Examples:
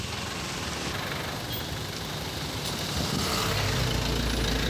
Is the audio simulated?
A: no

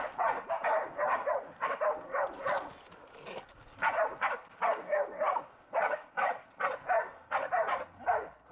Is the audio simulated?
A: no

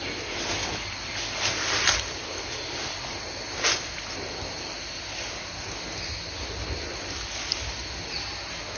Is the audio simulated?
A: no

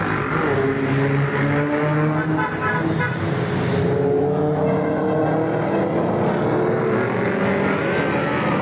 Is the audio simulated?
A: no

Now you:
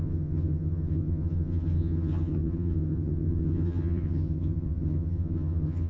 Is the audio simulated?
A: yes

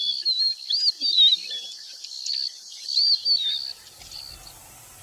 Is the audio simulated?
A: no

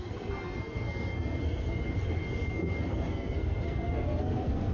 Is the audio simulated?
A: yes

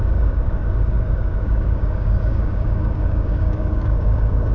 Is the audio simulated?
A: yes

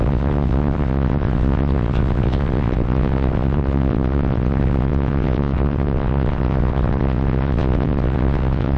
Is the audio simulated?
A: yes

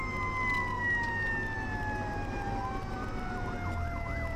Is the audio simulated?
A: no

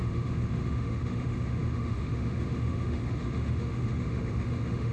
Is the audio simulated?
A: yes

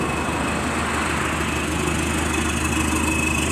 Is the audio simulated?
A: no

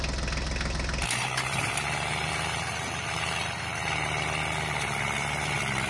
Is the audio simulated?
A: no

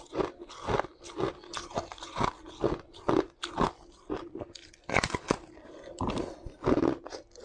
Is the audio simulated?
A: no